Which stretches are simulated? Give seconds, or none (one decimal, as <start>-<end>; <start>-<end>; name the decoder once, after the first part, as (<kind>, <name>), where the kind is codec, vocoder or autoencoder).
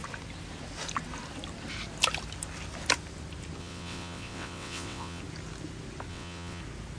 3.6-5.2 (vocoder, WaveNeXt); 6.1-6.6